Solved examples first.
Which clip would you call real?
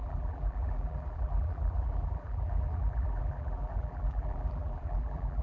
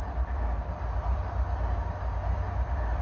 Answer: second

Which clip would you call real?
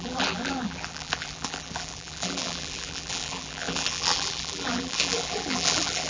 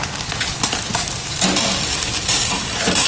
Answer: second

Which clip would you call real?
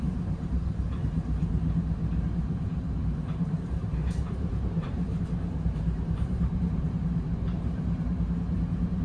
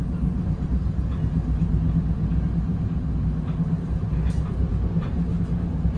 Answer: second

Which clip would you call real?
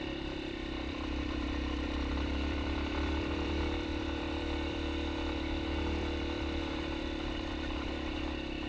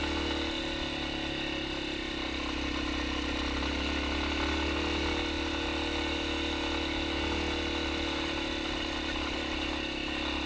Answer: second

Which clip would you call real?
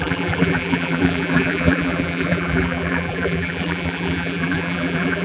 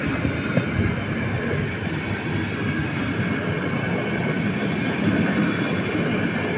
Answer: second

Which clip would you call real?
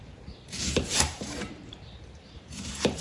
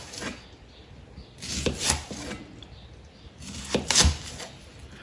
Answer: second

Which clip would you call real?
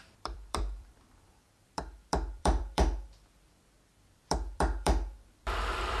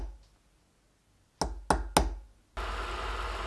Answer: second